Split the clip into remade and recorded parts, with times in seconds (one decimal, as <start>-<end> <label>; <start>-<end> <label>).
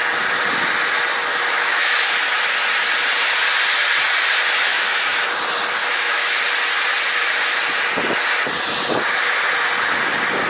0.0-1.3 recorded; 1.3-2.0 remade; 2.0-4.7 recorded; 4.7-5.2 remade; 5.2-5.8 recorded; 5.8-6.4 remade; 6.4-10.5 recorded